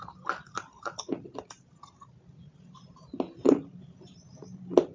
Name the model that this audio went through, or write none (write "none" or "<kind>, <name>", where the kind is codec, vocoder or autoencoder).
none